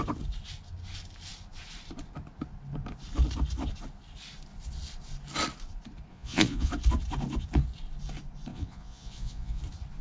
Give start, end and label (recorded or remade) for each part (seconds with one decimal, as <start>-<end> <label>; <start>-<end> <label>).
0.0-6.1 recorded; 6.1-6.7 remade; 6.7-8.5 recorded; 8.5-9.6 remade; 9.6-10.0 recorded